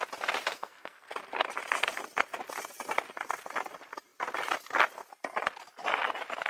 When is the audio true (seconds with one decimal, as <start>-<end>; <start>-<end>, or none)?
0.0-0.5; 1.1-6.5